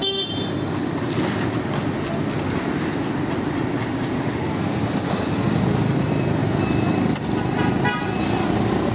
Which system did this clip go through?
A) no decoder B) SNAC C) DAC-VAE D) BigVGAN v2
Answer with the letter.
A